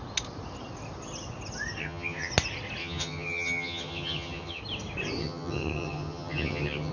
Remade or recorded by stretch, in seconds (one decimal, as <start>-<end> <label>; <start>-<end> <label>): 0.0-1.8 recorded; 1.8-2.3 remade; 2.3-2.8 recorded; 2.8-4.6 remade; 4.6-5.2 recorded; 5.2-6.9 remade